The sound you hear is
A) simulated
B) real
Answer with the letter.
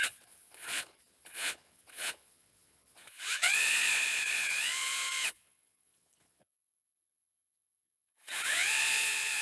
A